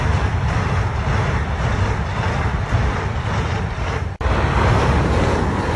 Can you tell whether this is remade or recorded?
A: remade